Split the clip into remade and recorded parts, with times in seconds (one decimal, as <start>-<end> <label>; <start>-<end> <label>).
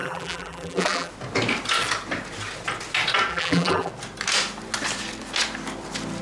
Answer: 0.0-1.1 remade; 1.1-3.3 recorded; 3.3-3.9 remade; 3.9-6.2 recorded